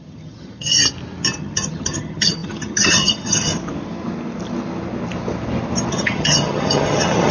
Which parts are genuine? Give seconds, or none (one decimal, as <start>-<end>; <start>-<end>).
0.8-1.4; 3.5-5.9